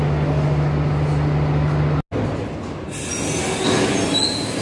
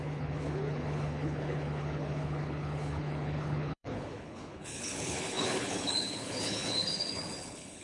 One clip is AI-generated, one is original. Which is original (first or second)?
first